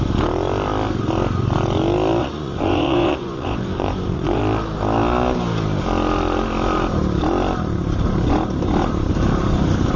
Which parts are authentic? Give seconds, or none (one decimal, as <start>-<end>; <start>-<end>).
0.0-2.2; 4.4-10.0